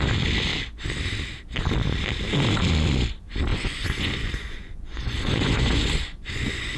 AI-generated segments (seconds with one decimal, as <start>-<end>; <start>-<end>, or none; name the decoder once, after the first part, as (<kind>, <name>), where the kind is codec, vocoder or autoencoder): 3.5-6.8 (vocoder, Vocos)